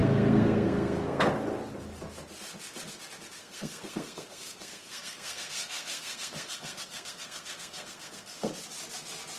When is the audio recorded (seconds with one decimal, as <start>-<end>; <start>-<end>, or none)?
1.3-3.4; 8.5-9.4